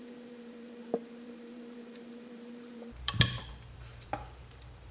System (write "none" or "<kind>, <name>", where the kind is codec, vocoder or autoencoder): vocoder, BigVGAN v2